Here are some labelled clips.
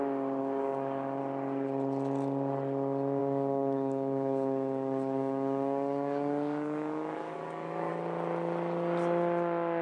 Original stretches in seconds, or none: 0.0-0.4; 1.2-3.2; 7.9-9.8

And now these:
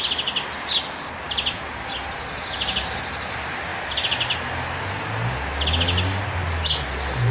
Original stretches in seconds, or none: 0.0-7.3

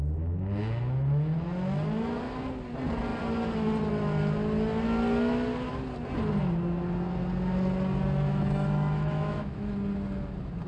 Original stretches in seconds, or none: 0.0-8.3; 9.7-10.7

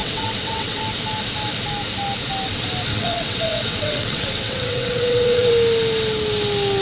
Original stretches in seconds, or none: 0.8-2.9; 5.5-6.8

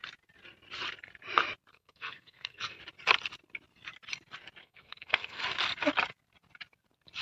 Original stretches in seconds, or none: 0.0-1.7; 2.8-4.6; 5.4-7.2